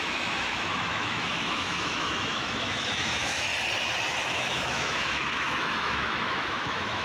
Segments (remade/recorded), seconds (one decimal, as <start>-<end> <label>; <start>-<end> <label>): 0.0-3.5 remade; 3.5-4.2 recorded; 4.2-7.0 remade